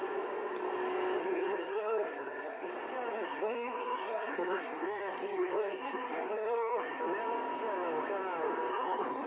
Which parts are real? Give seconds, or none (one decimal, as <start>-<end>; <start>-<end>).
0.0-1.2; 2.7-3.1; 7.0-8.7